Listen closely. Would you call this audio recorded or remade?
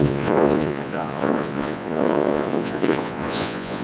remade